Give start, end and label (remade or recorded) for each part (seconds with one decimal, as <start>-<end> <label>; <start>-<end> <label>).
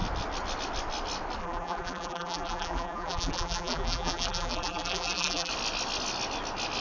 0.0-1.4 recorded; 1.4-5.5 remade; 5.5-6.8 recorded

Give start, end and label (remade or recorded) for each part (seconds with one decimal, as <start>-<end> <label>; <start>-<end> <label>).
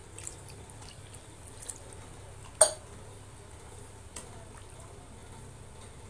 0.0-1.4 remade; 1.4-6.1 recorded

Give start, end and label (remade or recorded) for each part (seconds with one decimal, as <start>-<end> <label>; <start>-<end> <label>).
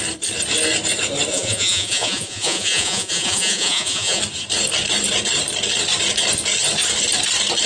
0.0-1.3 recorded; 1.3-4.2 remade; 4.2-7.7 recorded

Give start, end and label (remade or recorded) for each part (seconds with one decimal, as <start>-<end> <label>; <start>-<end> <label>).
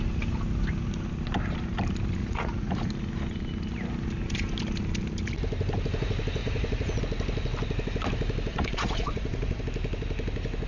0.0-2.2 recorded; 2.2-2.9 remade; 2.9-6.4 recorded; 6.4-7.0 remade; 7.0-8.5 recorded; 8.5-9.6 remade; 9.6-10.7 recorded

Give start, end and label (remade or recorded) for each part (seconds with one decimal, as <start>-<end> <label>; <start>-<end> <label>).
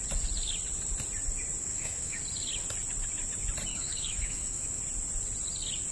0.0-1.6 recorded; 1.6-2.2 remade; 2.2-3.7 recorded; 3.7-4.8 remade; 4.8-5.9 recorded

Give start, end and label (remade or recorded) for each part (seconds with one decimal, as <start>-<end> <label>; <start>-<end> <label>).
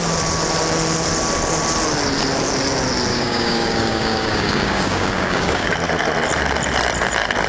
0.0-3.1 recorded; 3.1-5.7 remade; 5.7-7.5 recorded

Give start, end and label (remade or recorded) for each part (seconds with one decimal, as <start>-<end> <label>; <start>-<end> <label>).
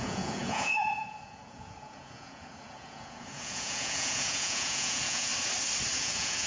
0.0-5.3 remade; 5.3-6.0 recorded; 6.0-6.5 remade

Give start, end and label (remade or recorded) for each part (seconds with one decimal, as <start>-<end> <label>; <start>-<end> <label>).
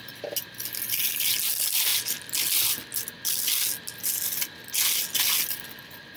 0.0-6.2 recorded